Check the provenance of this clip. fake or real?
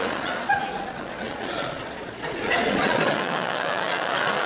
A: fake